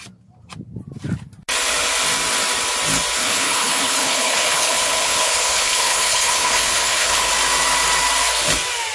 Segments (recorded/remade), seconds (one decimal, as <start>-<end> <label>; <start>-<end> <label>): 0.0-3.2 recorded; 3.2-7.3 remade; 7.3-8.9 recorded